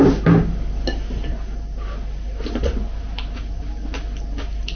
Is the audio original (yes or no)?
yes